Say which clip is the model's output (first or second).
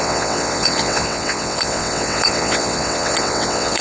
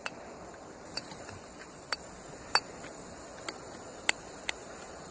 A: first